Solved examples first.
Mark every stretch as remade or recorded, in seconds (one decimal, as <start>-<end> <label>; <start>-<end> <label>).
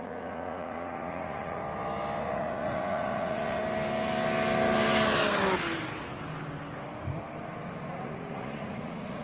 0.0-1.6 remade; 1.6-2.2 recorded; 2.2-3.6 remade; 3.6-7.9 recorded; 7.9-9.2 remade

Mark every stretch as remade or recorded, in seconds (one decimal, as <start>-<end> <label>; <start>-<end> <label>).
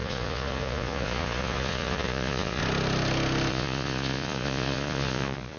0.0-2.6 remade; 2.6-3.5 recorded; 3.5-5.6 remade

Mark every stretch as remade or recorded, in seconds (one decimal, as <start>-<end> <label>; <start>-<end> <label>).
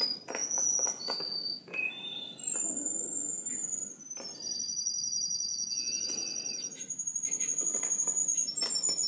0.0-0.4 recorded; 0.4-1.9 remade; 1.9-5.5 recorded; 5.5-6.0 remade; 6.0-9.1 recorded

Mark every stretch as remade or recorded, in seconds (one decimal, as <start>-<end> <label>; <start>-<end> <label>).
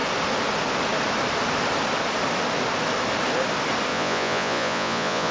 0.0-3.9 recorded; 3.9-5.3 remade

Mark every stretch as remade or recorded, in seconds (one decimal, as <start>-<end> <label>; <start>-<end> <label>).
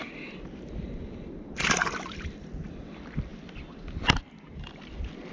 0.0-5.3 recorded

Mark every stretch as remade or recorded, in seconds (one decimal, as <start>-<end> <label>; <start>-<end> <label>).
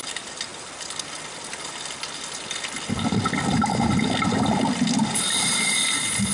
0.0-6.3 recorded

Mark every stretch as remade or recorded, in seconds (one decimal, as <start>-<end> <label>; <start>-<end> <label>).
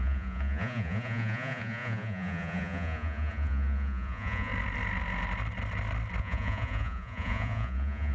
0.0-4.5 remade; 4.5-6.2 recorded; 6.2-8.1 remade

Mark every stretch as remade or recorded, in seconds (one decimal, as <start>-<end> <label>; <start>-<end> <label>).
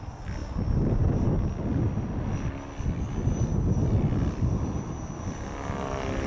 0.0-6.3 recorded